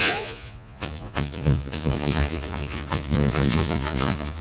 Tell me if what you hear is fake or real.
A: fake